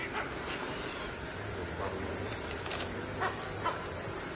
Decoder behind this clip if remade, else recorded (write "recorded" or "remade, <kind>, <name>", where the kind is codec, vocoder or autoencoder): recorded